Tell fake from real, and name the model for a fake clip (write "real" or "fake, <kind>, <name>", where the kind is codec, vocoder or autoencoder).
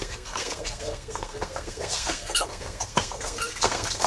fake, codec, SNAC